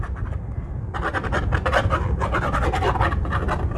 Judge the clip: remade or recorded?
recorded